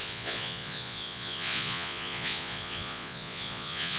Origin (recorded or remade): remade